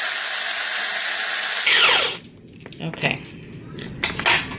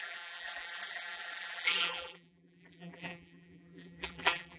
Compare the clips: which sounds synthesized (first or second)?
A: second